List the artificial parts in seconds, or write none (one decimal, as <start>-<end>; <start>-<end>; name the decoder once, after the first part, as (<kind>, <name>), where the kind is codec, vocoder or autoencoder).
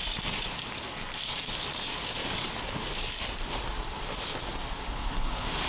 0.5-2.2 (vocoder, BigVGAN v2); 2.8-4.3; 5.0-5.7